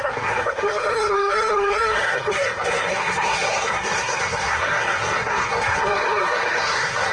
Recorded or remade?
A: remade